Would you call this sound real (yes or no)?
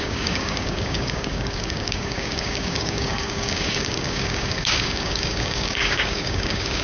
no